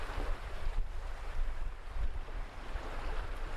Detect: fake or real fake